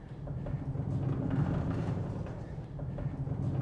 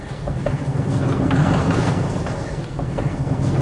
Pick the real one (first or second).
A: first